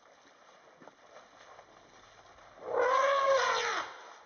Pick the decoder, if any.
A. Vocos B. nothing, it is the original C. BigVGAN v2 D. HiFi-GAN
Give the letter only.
B